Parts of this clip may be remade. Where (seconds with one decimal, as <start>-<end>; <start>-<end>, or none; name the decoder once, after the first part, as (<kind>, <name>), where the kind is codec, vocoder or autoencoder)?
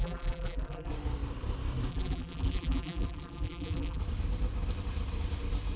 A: 0.0-0.9 (vocoder, BigVGAN v2); 1.9-4.0